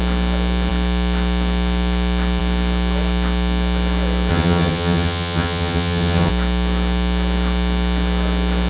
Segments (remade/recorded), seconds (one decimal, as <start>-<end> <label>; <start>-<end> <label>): 0.0-4.3 recorded; 4.3-6.3 remade; 6.3-8.7 recorded